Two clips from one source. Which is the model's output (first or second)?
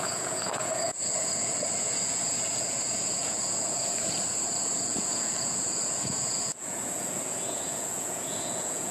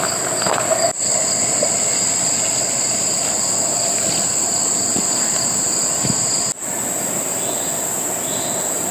first